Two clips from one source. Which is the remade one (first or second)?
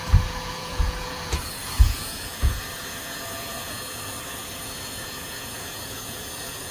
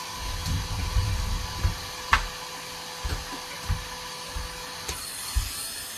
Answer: first